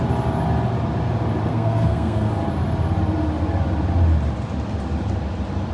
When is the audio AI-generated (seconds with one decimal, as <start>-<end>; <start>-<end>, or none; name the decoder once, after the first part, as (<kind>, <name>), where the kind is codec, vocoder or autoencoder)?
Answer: 1.5-2.3 (codec, SNAC)